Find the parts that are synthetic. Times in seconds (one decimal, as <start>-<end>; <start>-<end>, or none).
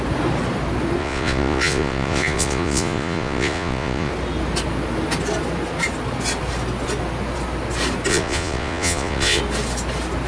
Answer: 1.0-4.1; 8.1-9.4